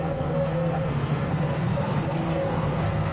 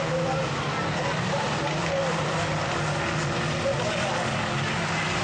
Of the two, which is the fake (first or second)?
first